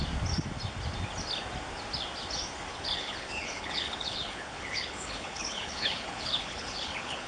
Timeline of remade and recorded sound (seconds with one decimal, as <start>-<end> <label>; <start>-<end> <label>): 0.0-2.7 recorded; 2.7-7.3 remade